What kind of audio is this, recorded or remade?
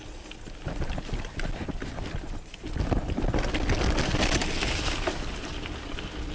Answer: recorded